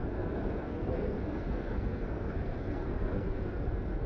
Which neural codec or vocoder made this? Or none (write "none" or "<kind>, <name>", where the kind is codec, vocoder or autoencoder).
codec, SNAC